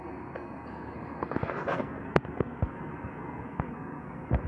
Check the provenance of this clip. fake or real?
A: fake